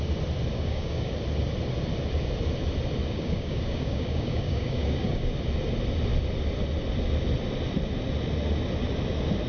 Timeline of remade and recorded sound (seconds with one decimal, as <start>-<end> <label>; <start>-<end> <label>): 0.0-0.5 recorded; 0.5-1.1 remade; 1.1-3.0 recorded; 3.0-5.3 remade; 5.3-9.5 recorded